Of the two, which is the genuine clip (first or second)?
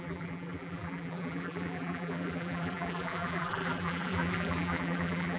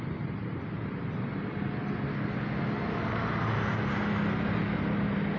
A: second